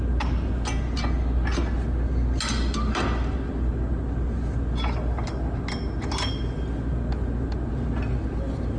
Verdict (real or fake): real